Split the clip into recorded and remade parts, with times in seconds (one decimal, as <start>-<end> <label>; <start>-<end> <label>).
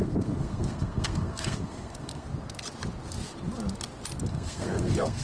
0.0-2.3 remade; 2.3-4.3 recorded; 4.3-5.2 remade